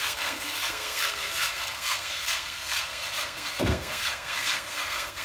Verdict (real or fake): fake